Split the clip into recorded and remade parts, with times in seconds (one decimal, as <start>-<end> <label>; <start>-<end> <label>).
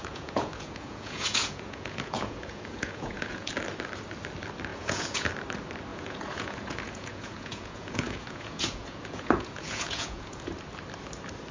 0.0-3.5 remade; 3.5-4.7 recorded; 4.7-5.3 remade; 5.3-5.9 recorded; 5.9-10.5 remade; 10.5-11.5 recorded